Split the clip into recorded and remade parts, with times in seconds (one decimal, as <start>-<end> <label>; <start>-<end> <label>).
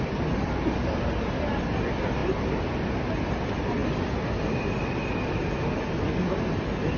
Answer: 0.0-7.0 recorded